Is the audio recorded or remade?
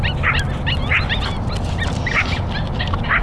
recorded